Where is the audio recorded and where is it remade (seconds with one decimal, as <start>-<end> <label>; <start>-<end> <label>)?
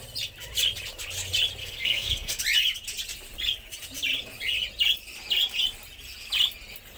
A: 0.0-1.6 recorded; 1.6-2.4 remade; 2.4-7.0 recorded